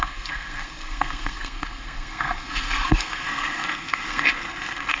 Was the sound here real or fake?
fake